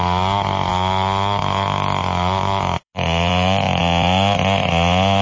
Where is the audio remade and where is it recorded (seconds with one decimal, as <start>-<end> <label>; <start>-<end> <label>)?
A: 0.0-0.7 recorded; 0.7-3.8 remade; 3.8-5.2 recorded